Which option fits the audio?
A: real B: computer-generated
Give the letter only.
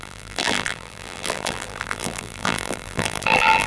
B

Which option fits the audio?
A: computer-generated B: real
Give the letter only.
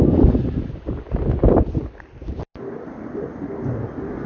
A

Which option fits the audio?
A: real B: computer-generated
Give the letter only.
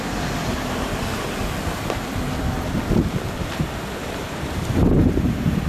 B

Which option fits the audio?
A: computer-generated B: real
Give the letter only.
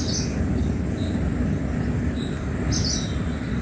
B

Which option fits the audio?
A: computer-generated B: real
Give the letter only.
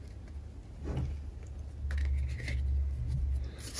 B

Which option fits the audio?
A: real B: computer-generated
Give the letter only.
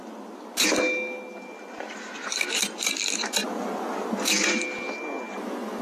A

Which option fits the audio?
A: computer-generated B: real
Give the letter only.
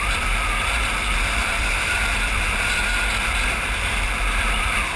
A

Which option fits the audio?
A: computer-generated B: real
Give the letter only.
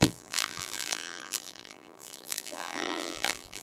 A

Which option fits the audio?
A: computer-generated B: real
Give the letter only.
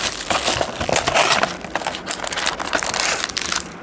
B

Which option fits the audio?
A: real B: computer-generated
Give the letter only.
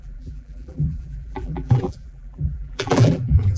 B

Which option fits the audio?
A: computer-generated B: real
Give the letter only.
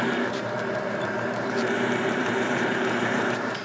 A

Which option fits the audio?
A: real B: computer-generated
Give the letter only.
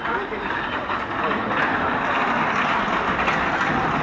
A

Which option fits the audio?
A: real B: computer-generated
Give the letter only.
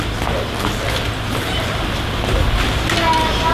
A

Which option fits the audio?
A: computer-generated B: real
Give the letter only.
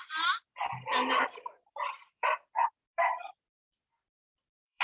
A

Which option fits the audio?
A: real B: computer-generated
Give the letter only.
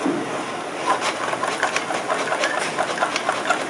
A